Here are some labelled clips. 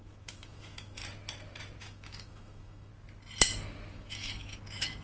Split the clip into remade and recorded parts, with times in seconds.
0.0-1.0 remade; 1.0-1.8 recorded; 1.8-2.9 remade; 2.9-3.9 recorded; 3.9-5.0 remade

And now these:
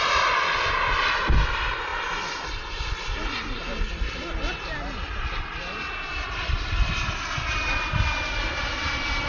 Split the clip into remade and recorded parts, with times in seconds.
0.0-9.3 recorded

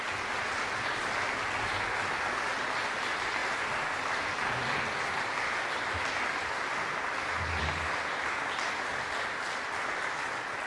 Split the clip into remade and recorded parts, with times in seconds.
0.0-10.7 recorded

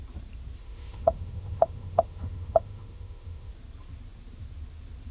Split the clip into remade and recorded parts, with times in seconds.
0.0-0.6 recorded; 0.6-3.5 remade; 3.5-5.1 recorded

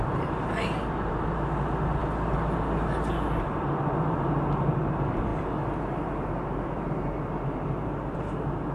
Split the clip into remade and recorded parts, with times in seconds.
0.0-8.7 recorded

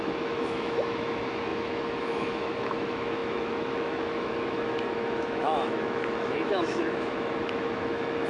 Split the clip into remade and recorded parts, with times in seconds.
0.0-8.3 remade